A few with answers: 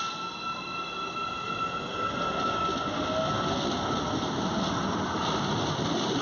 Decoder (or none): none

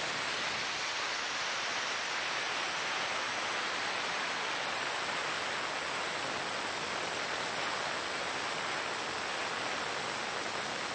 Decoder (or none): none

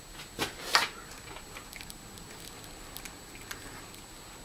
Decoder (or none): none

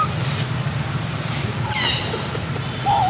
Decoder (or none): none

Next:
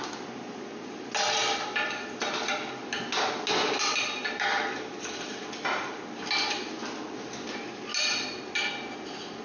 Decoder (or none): none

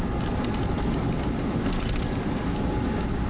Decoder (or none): none